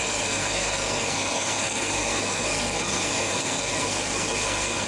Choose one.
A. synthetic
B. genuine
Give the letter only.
A